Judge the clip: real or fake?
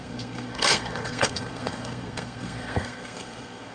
fake